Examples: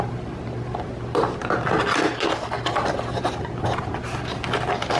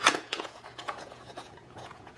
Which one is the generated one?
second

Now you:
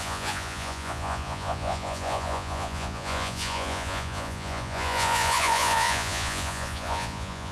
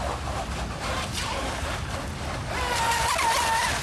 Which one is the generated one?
first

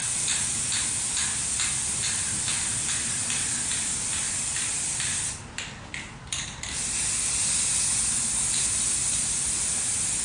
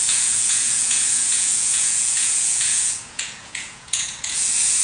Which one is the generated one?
second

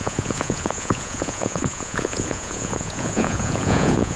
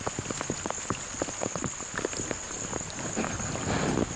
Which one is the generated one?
first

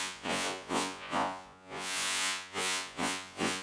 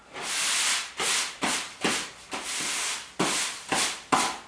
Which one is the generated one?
first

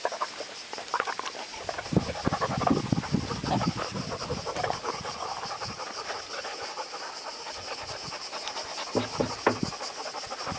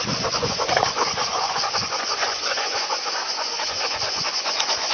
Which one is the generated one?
second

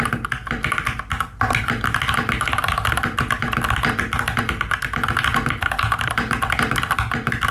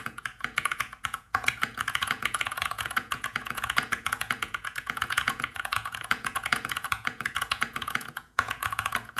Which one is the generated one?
second